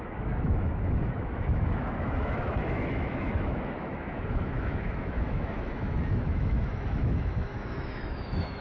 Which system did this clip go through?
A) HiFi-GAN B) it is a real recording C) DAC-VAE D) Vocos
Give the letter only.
C